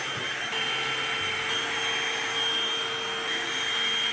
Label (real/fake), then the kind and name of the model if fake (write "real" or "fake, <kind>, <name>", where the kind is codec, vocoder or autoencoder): real